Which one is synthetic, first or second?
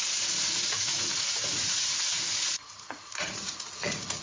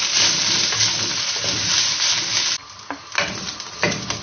first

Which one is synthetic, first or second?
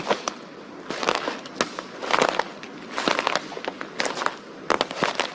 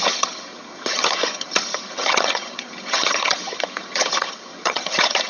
second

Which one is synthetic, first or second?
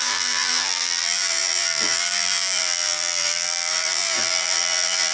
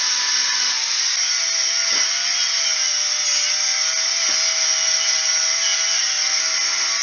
first